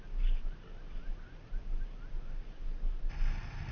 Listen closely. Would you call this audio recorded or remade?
recorded